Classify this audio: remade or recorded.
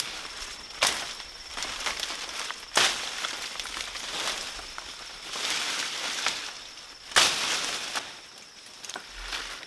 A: recorded